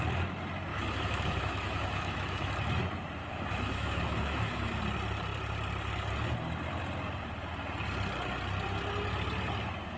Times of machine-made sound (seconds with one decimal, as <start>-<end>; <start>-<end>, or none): 0.7-2.5; 3.2-4.8

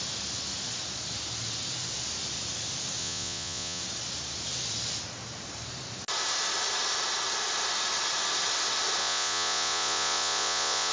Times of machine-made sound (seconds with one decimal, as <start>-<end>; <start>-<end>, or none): 3.0-3.8; 9.0-10.9

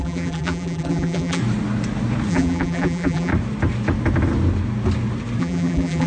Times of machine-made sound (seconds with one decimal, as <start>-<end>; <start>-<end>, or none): 0.0-1.4; 2.3-3.3; 5.4-6.1

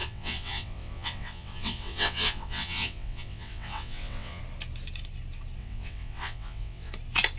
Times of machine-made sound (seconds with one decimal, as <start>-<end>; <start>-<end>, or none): 0.0-4.4; 5.6-6.9